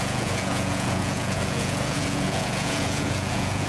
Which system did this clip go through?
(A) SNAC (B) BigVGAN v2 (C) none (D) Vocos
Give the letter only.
D